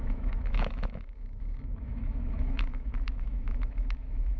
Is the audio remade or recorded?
remade